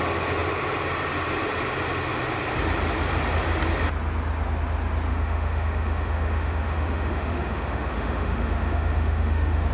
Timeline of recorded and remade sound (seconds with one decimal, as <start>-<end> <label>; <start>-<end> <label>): 0.0-5.1 recorded; 5.1-9.7 remade